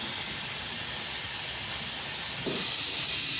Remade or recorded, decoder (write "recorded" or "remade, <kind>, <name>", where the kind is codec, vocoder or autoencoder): recorded